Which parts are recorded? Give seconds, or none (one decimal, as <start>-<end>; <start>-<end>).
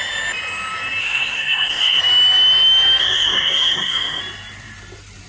0.0-1.0; 2.0-3.0; 4.2-5.3